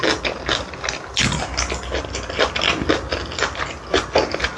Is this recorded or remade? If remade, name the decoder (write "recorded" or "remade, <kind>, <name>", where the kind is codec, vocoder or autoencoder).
recorded